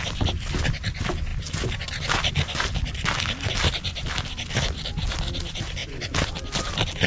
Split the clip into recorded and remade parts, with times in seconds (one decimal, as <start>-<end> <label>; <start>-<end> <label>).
0.0-7.1 recorded